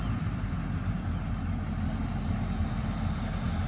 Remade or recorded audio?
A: recorded